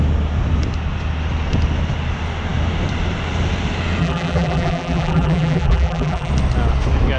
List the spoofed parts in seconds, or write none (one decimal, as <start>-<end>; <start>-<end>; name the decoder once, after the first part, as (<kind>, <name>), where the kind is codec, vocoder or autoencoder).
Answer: 4.0-6.3 (vocoder, BigVGAN v2)